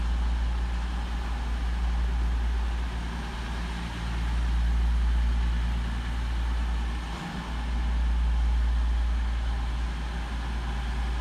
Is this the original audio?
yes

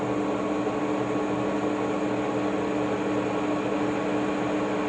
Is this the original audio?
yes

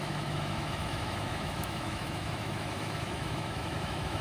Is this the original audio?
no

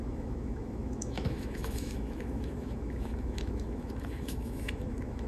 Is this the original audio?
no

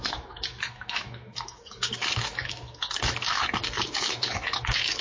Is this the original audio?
no